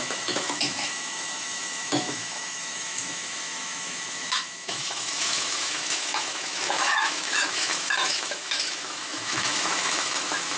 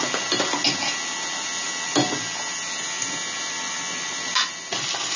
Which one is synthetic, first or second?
first